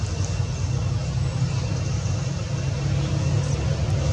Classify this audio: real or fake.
real